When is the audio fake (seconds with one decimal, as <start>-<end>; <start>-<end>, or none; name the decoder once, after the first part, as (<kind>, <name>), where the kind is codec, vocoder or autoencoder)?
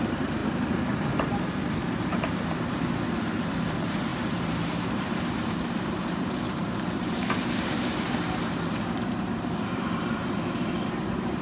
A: 0.0-11.4 (vocoder, BigVGAN v2)